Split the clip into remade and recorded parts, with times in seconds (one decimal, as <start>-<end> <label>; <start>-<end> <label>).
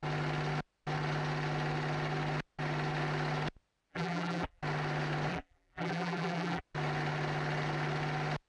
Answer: 0.0-3.9 recorded; 3.9-4.6 remade; 4.6-5.3 recorded; 5.3-6.6 remade; 6.6-8.5 recorded